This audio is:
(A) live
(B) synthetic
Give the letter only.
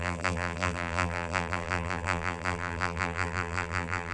B